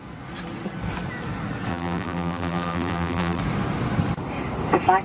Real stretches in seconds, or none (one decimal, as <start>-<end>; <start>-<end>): 0.0-1.7; 3.4-5.0